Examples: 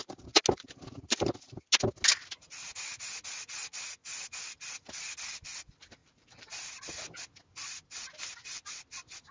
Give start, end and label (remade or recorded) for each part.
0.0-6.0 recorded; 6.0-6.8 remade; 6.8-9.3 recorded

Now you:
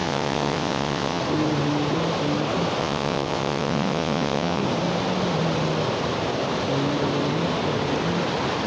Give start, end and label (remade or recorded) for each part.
0.0-1.2 remade; 1.2-2.8 recorded; 2.8-4.6 remade; 4.6-8.7 recorded

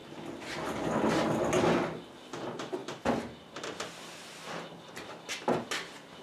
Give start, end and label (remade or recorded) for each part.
0.0-1.0 remade; 1.0-2.8 recorded; 2.8-4.8 remade; 4.8-6.2 recorded

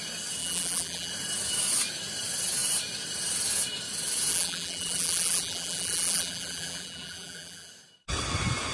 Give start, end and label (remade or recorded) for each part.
0.0-0.4 recorded; 0.4-1.1 remade; 1.1-4.3 recorded; 4.3-7.7 remade; 7.7-8.7 recorded

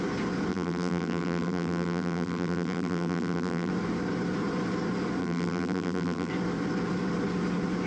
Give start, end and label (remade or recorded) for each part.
0.0-0.5 recorded; 0.5-3.7 remade; 3.7-5.2 recorded; 5.2-6.3 remade; 6.3-7.9 recorded

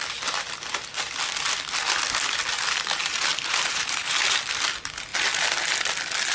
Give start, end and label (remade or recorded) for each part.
0.0-3.0 recorded; 3.0-4.4 remade; 4.4-6.3 recorded